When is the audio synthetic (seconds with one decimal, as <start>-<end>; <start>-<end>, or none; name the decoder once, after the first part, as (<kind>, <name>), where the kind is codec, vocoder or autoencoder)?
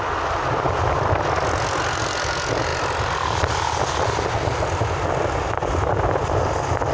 none